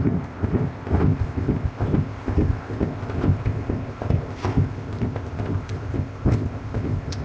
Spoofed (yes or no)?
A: yes